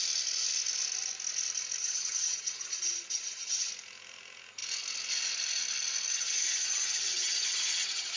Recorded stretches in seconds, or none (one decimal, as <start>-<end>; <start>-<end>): 0.0-1.8; 3.7-6.1